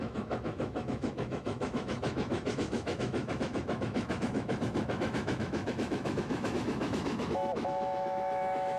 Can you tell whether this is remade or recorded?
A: remade